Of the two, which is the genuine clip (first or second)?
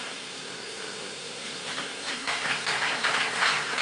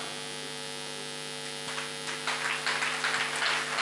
second